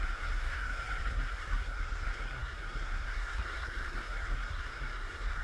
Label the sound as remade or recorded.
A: remade